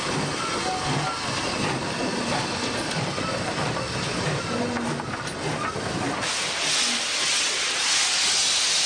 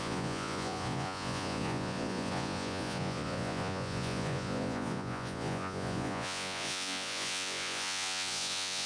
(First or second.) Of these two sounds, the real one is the first